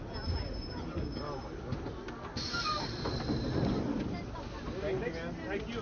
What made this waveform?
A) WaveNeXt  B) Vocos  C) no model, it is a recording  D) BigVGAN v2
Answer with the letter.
C